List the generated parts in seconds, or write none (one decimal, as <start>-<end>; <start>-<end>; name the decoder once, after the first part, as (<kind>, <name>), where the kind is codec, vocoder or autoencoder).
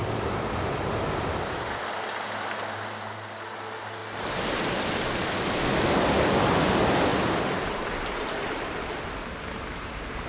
none